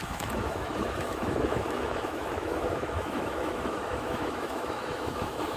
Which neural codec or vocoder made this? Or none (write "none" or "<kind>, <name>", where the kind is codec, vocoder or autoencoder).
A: autoencoder, DAC-VAE